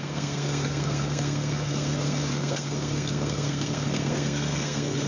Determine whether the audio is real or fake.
fake